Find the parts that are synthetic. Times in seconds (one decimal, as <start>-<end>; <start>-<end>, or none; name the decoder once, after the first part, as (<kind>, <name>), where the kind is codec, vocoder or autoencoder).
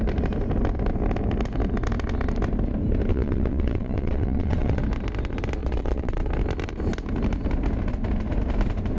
3.1-4.8 (vocoder, WaveNeXt); 5.6-6.3